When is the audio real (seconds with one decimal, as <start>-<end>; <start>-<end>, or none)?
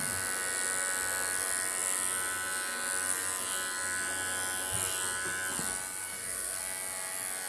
0.0-6.0; 6.6-7.5